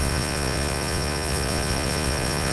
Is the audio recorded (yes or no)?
no